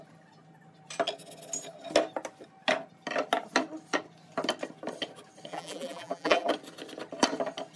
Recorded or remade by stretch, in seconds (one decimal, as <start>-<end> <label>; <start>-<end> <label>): 0.0-5.5 recorded; 5.5-6.5 remade; 6.5-7.8 recorded